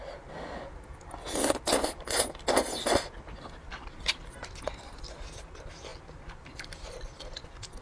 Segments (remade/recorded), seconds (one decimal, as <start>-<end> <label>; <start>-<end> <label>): 0.0-7.8 recorded